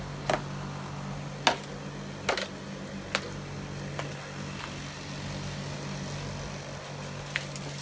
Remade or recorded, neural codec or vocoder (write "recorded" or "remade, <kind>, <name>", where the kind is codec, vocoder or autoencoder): recorded